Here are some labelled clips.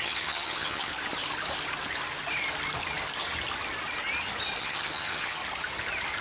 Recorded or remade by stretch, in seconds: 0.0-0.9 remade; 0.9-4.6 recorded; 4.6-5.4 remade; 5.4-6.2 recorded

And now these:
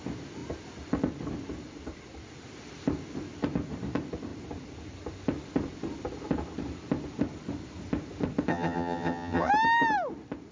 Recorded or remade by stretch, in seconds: 0.0-8.5 recorded; 8.5-9.5 remade; 9.5-10.5 recorded

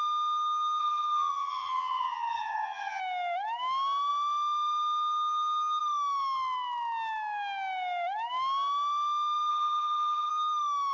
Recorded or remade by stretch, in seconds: 0.0-0.8 recorded; 0.8-3.0 remade; 3.0-9.5 recorded; 9.5-10.3 remade; 10.3-10.9 recorded

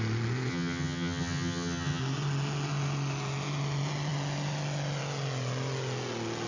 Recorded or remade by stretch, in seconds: 0.0-0.5 recorded; 0.5-2.0 remade; 2.0-6.5 recorded

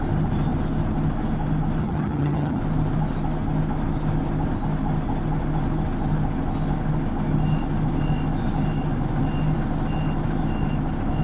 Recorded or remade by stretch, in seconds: 0.0-1.8 recorded; 1.8-2.6 remade; 2.6-11.2 recorded

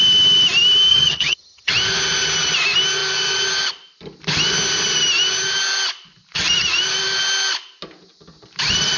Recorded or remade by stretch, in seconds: 0.0-0.9 recorded; 0.9-1.7 remade; 1.7-9.0 recorded

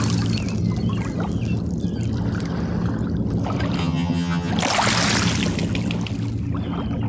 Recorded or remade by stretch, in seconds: 0.0-3.8 recorded; 3.8-4.5 remade; 4.5-7.1 recorded